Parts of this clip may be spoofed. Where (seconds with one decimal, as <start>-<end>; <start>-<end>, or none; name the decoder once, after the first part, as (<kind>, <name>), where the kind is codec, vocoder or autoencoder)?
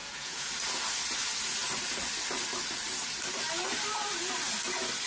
0.0-0.5 (vocoder, Vocos)